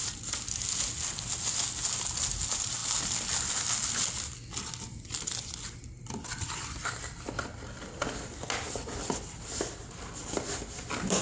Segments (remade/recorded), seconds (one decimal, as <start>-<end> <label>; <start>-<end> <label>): 0.0-11.2 recorded